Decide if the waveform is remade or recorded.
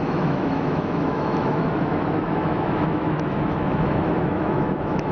remade